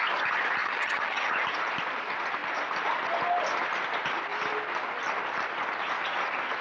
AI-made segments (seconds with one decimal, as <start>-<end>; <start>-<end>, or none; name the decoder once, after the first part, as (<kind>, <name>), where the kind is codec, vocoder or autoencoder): 0.6-1.3 (vocoder, HiFi-GAN)

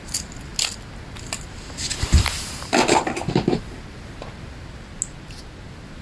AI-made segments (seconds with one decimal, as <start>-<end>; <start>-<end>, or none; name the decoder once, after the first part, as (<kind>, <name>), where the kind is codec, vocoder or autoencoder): none